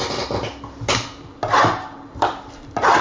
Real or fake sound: real